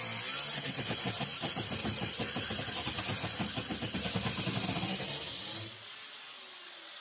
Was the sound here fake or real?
real